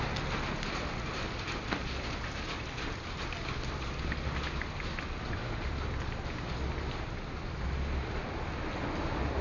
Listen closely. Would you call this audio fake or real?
real